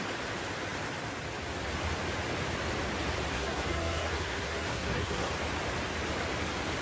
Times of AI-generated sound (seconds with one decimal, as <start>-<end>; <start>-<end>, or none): 3.3-5.3